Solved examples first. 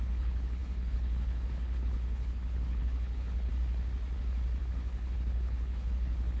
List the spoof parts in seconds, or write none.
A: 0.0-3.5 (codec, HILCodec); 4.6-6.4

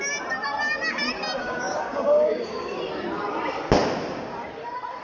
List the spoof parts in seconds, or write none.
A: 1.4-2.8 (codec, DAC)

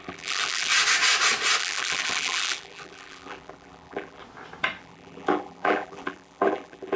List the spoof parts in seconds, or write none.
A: 0.0-0.7 (vocoder, BigVGAN v2); 1.6-4.2; 4.8-7.0

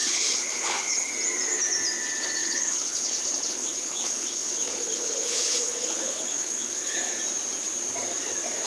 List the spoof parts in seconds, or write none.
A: 0.0-1.1 (codec, HILCodec); 2.4-7.2

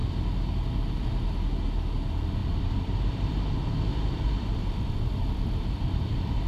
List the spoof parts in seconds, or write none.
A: 0.0-0.5 (vocoder, BigVGAN v2); 2.4-6.5

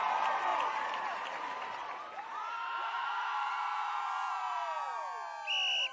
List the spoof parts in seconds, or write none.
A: 0.5-4.0 (vocoder, BigVGAN v2)